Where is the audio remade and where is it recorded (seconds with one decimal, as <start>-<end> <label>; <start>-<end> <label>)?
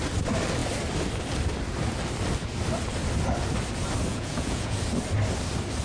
0.0-4.1 recorded; 4.1-4.8 remade; 4.8-5.8 recorded